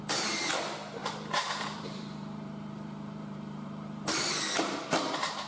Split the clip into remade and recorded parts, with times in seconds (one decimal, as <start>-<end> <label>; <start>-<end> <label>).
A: 0.0-1.0 recorded; 1.0-4.3 remade; 4.3-5.5 recorded

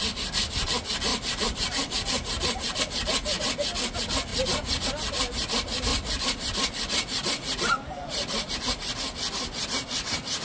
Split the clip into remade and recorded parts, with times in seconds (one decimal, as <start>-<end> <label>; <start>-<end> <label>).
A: 0.0-1.1 recorded; 1.1-2.8 remade; 2.8-4.3 recorded; 4.3-4.9 remade; 4.9-5.9 recorded; 5.9-8.5 remade; 8.5-10.4 recorded

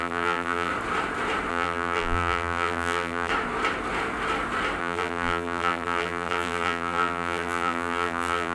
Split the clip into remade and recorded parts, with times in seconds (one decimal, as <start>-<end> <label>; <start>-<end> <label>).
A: 0.0-0.7 remade; 0.7-1.5 recorded; 1.5-3.3 remade; 3.3-4.8 recorded; 4.8-8.5 remade

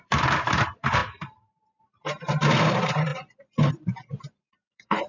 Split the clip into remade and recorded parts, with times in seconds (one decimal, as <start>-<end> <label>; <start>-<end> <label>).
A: 0.0-3.1 remade; 3.1-3.7 recorded; 3.7-5.1 remade

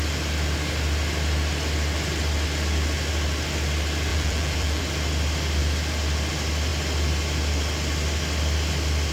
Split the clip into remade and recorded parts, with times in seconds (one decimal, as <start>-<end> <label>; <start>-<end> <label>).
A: 0.0-4.1 recorded; 4.1-4.8 remade; 4.8-9.1 recorded

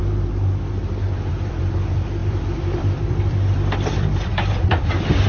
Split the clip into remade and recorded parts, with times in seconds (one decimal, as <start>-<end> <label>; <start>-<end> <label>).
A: 0.0-1.3 recorded; 1.3-5.3 remade